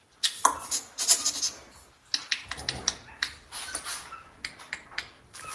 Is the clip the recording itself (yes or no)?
yes